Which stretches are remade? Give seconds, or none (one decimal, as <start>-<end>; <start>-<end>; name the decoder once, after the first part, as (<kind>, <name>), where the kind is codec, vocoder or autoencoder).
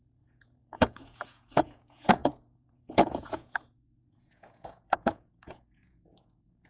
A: 0.0-6.7 (vocoder, Vocos)